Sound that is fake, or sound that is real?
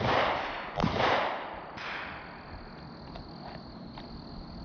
real